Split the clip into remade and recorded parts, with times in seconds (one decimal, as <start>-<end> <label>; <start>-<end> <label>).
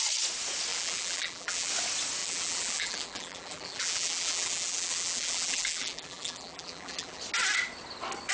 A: 0.0-0.7 recorded; 0.7-1.7 remade; 1.7-2.2 recorded; 2.2-7.2 remade; 7.2-8.3 recorded